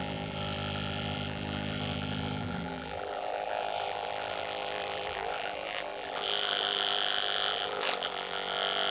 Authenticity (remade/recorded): remade